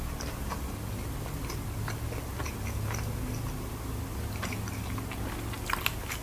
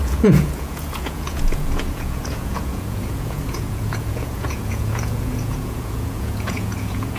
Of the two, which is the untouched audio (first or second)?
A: first